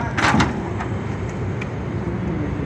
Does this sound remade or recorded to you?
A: remade